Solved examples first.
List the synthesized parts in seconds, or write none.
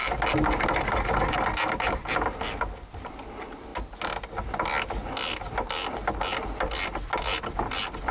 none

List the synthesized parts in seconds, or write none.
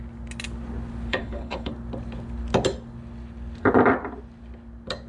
1.1-1.7 (codec, HILCodec)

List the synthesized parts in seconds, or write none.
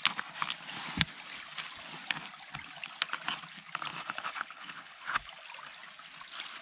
3.9-5.3 (codec, HILCodec)